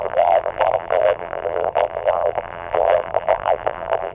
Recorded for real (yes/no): no